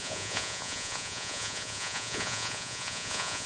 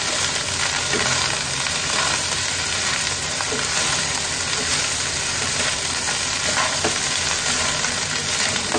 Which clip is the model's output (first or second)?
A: first